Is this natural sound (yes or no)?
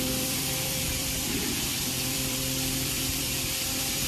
no